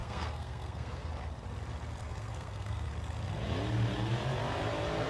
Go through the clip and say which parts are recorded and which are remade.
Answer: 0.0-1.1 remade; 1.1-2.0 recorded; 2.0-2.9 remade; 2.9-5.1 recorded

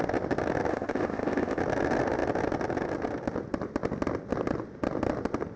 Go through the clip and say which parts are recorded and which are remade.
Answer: 0.0-0.7 recorded; 0.7-1.6 remade; 1.6-5.6 recorded